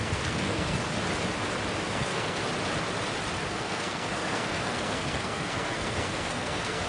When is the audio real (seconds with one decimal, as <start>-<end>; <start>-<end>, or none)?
0.8-1.9; 2.5-3.5